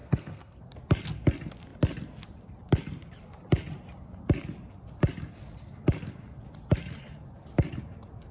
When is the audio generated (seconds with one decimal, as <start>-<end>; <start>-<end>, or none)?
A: 0.0-0.6